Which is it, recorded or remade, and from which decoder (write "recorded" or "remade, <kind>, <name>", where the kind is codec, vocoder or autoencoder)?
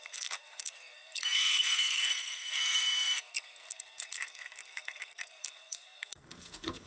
remade, codec, SNAC